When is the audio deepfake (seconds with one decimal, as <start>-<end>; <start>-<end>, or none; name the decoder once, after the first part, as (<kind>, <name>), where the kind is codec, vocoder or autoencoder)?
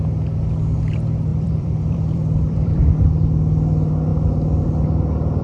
1.3-2.9 (vocoder, BigVGAN v2)